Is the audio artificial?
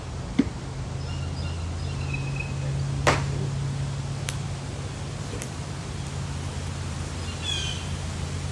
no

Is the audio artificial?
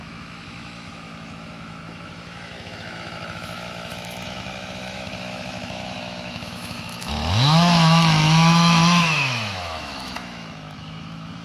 yes